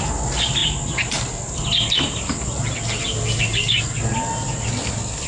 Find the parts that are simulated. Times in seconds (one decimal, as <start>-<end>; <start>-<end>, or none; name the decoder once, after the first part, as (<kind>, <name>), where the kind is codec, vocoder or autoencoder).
none